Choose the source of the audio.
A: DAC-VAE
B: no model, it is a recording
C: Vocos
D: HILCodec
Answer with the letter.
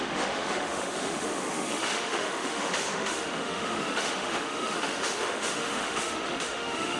A